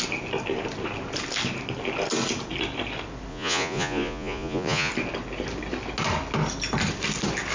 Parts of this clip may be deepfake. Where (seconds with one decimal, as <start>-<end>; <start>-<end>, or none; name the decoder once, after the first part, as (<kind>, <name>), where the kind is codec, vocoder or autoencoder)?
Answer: 3.3-4.9 (vocoder, Vocos)